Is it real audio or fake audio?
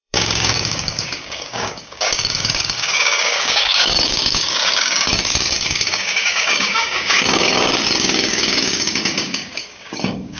fake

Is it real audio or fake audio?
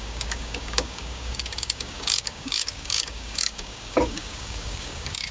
fake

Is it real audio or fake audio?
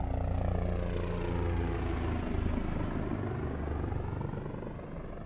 real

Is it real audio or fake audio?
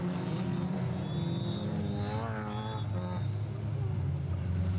real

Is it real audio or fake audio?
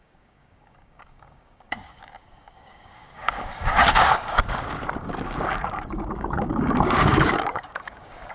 fake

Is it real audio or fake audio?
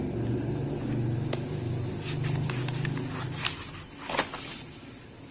real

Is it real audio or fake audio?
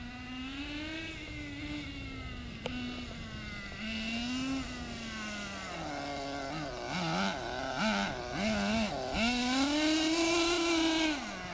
real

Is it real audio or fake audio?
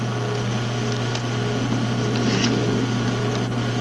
real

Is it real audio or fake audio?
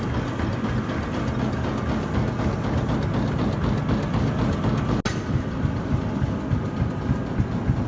real